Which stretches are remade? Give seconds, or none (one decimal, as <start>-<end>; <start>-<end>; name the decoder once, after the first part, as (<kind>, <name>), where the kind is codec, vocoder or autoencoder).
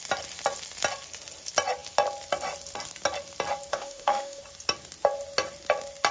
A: 3.7-4.4 (autoencoder, DAC-VAE)